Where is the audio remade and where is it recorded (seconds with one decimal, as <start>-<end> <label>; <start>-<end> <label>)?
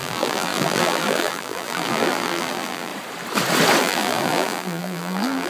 0.0-2.9 remade; 2.9-3.8 recorded; 3.8-5.5 remade